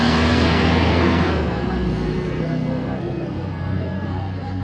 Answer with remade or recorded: remade